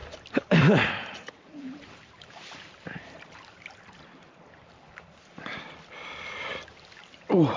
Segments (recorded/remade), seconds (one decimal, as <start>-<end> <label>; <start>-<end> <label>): 0.0-0.6 recorded; 0.6-5.5 remade; 5.5-7.0 recorded; 7.0-7.6 remade